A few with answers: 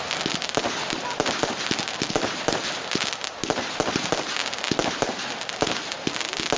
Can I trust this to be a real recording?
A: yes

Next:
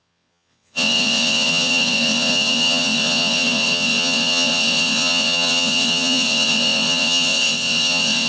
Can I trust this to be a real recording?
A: no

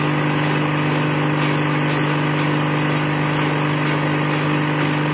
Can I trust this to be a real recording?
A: yes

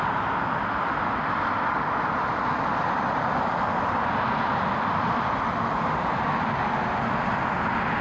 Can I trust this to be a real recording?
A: yes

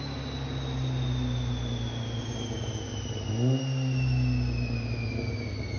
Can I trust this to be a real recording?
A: yes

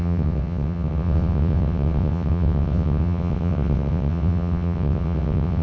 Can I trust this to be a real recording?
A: no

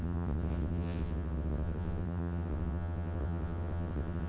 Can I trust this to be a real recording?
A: no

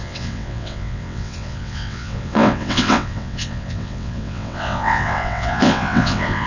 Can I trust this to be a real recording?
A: no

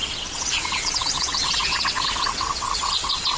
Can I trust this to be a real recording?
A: no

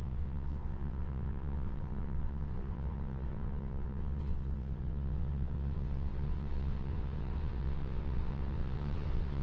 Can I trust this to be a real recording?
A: no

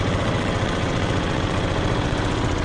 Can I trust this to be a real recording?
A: no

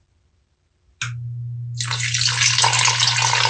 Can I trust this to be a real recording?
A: yes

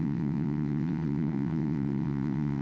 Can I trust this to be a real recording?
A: no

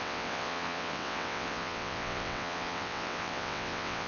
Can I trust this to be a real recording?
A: no